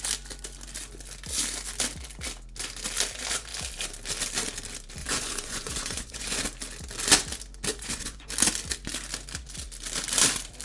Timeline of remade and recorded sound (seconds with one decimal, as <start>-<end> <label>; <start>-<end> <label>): 0.0-5.0 recorded; 5.0-6.4 remade; 6.4-7.7 recorded; 7.7-8.3 remade; 8.3-10.6 recorded